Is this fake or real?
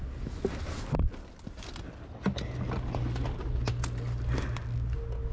real